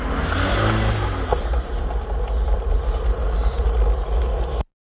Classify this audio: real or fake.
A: real